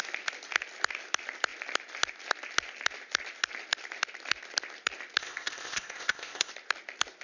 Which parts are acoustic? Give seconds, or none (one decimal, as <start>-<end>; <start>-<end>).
0.0-5.2; 6.5-7.2